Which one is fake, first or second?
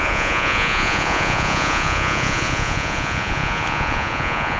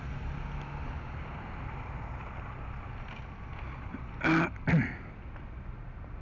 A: first